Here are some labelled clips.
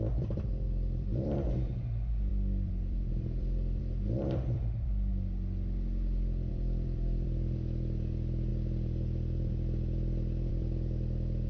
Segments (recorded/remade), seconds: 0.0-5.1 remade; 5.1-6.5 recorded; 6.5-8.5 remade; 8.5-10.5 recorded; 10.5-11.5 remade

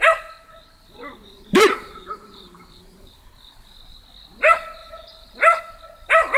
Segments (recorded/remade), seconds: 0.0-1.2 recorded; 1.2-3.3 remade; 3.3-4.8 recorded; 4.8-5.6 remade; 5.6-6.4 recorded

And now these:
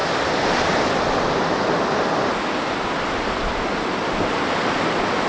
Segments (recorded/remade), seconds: 0.0-5.3 recorded

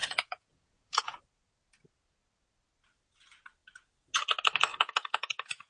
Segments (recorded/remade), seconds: 0.0-1.2 remade; 1.2-4.7 recorded; 4.7-5.7 remade